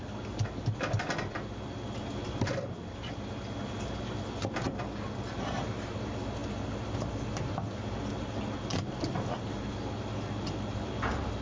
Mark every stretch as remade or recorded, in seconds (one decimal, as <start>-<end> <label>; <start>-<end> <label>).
0.0-11.4 recorded